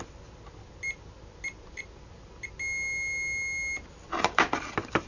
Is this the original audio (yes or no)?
yes